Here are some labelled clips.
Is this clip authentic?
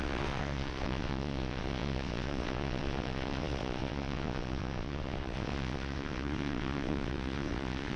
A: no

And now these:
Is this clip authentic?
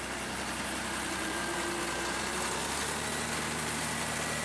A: yes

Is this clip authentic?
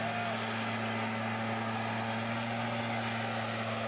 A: yes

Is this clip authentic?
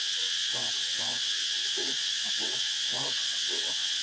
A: no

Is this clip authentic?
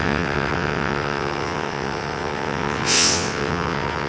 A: no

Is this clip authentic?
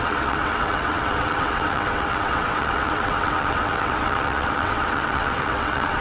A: no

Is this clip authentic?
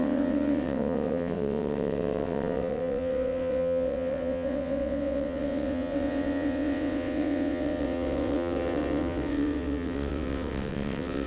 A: no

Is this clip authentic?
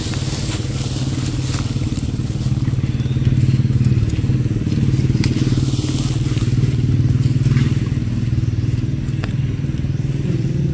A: yes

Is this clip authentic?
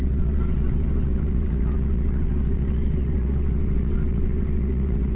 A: no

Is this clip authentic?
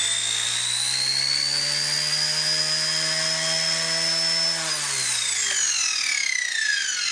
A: yes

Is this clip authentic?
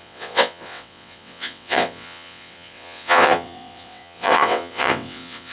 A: no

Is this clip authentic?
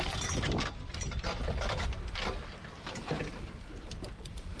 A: yes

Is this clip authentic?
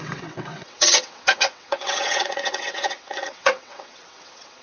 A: no